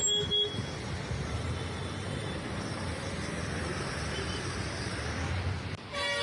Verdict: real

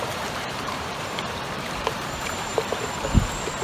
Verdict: fake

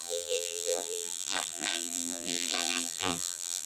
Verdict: fake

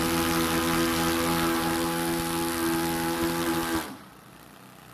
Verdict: real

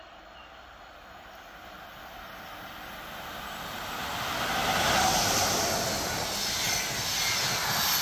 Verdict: real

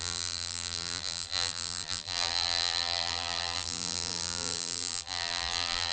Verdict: fake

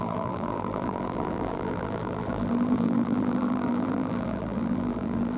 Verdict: fake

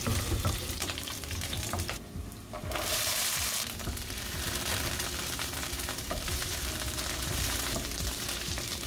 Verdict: fake